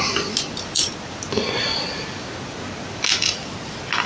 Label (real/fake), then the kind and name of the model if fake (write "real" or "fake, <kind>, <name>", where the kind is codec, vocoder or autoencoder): real